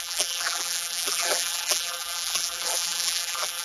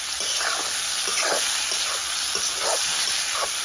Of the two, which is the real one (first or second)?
second